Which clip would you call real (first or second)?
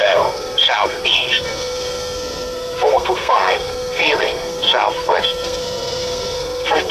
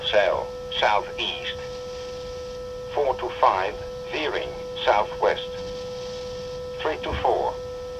second